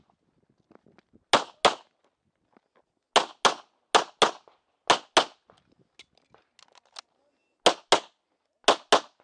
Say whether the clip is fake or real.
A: real